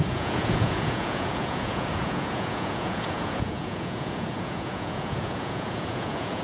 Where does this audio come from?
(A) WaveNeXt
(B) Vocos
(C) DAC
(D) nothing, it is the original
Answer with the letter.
B